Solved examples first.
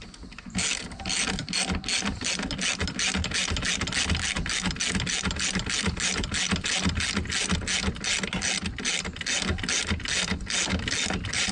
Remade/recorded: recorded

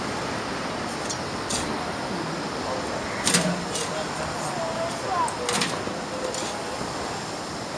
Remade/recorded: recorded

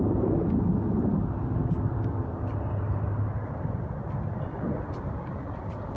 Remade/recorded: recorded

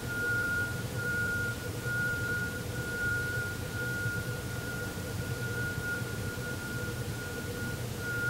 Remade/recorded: remade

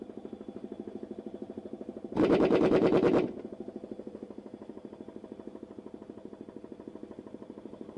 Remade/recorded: remade